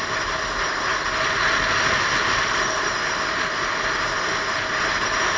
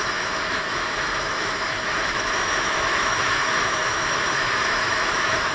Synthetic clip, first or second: second